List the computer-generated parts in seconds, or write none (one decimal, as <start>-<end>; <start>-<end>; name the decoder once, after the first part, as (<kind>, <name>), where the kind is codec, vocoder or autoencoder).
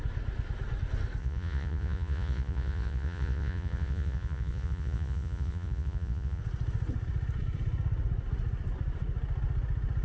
1.2-6.4 (vocoder, Vocos)